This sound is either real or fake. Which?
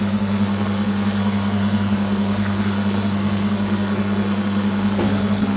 fake